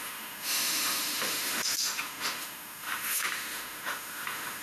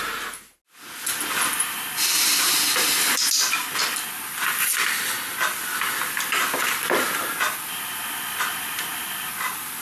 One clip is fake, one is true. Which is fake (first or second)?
first